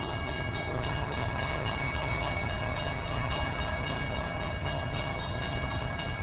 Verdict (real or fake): fake